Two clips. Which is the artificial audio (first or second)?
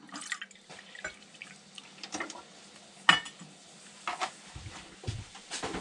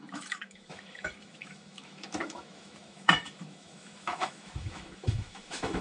second